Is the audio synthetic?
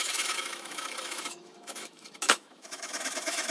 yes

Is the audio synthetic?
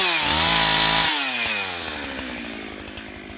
no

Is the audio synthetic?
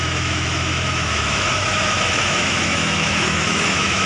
yes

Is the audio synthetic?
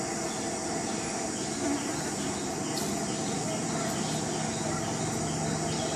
no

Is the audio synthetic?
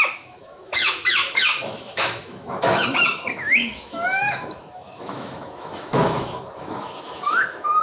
yes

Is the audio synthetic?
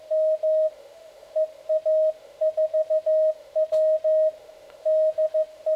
yes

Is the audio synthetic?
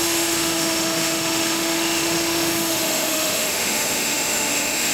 yes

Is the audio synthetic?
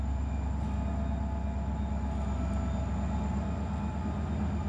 no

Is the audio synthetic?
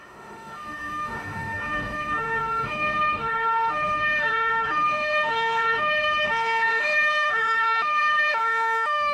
yes